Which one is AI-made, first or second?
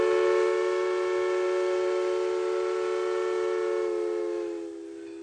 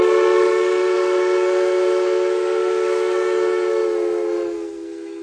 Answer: second